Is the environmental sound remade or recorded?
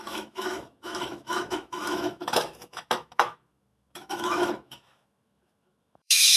remade